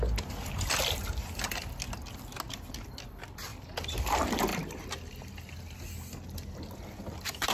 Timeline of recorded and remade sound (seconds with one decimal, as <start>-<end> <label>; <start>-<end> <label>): 0.0-7.5 recorded